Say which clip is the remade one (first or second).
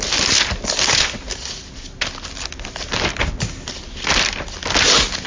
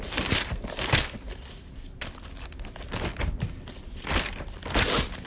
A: second